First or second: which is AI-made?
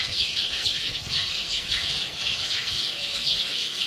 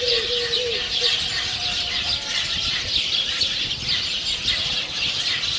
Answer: first